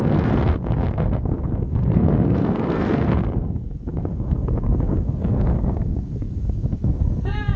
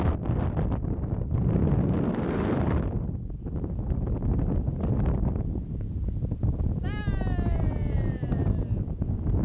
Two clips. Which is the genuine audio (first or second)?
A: second